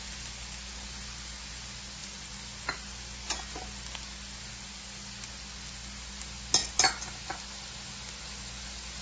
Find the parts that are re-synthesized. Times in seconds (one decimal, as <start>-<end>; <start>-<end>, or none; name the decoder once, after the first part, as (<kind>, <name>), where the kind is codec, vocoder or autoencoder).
none